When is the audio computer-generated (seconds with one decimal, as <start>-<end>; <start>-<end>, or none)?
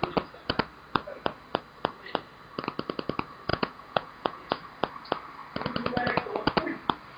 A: 3.5-4.5